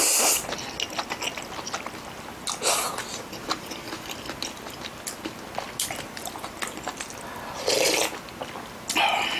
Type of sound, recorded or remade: recorded